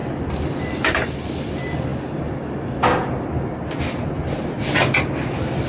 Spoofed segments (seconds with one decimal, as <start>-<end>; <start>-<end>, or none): 0.0-0.6

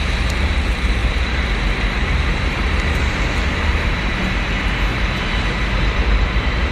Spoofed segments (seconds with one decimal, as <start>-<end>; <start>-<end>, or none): 0.0-6.7

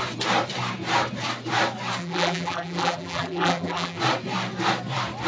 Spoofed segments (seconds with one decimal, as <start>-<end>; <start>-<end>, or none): 2.0-4.0